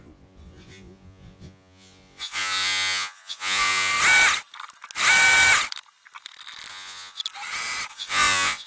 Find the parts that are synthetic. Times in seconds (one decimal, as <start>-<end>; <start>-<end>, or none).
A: 0.0-3.9; 6.7-7.2; 7.9-8.7